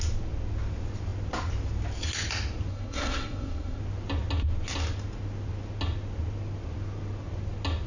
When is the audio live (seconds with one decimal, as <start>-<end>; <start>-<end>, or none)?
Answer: 0.0-2.7; 3.8-7.9